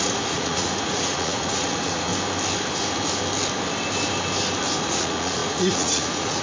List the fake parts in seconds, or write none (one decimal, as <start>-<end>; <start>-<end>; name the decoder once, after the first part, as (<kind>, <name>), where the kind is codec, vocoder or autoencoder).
0.0-2.1 (vocoder, Vocos); 4.8-6.4